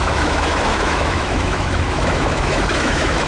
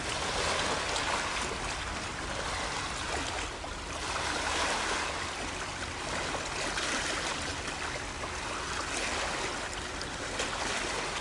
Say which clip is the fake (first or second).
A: first